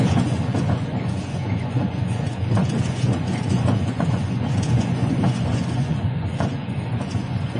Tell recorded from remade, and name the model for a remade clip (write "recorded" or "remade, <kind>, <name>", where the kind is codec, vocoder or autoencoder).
remade, vocoder, Vocos